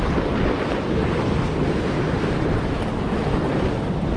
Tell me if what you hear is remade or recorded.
recorded